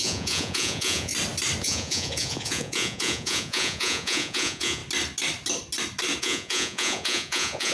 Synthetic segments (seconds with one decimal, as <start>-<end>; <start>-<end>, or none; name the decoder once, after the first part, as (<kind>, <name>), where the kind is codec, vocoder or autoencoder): 0.0-1.1 (vocoder, Vocos); 1.6-4.8; 6.2-7.7